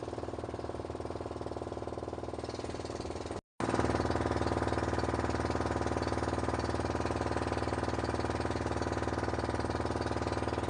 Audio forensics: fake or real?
real